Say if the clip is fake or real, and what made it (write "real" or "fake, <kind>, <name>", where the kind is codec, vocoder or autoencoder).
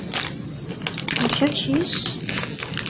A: real